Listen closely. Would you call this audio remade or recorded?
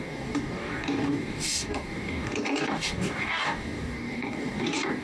remade